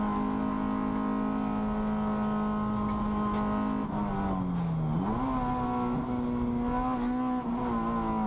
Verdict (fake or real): real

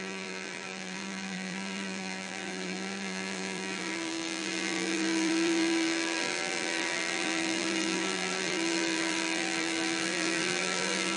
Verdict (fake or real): fake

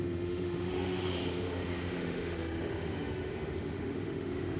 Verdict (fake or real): fake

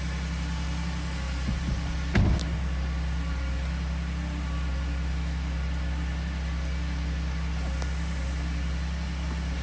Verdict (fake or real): real